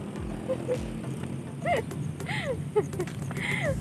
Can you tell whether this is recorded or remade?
recorded